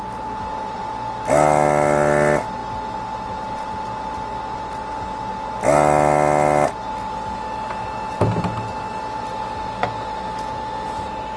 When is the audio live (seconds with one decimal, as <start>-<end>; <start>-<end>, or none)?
0.0-11.4